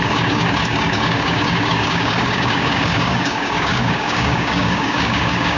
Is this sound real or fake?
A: fake